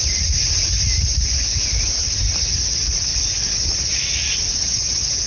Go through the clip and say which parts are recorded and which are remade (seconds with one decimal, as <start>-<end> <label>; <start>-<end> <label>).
0.0-5.3 recorded